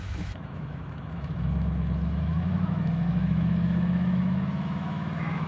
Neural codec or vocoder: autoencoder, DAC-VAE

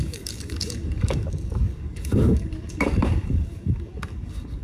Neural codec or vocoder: codec, DAC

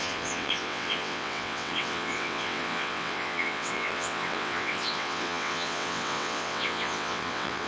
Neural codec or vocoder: vocoder, WaveNeXt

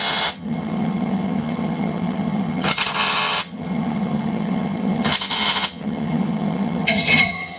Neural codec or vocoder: vocoder, HiFi-GAN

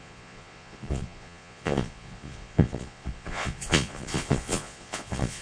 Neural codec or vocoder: vocoder, Vocos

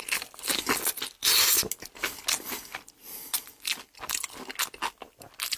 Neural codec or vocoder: none